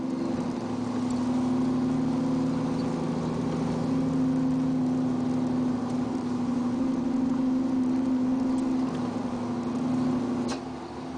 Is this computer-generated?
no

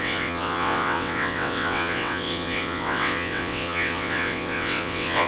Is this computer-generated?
yes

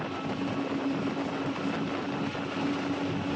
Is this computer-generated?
no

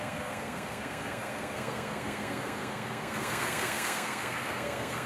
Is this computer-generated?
yes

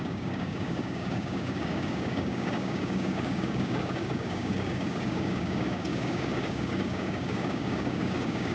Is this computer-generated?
yes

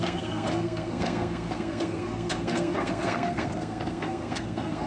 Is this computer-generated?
yes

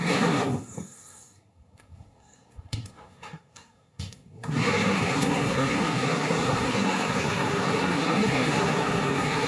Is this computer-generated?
yes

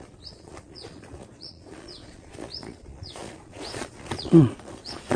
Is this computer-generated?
yes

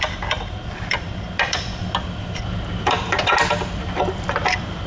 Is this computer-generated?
yes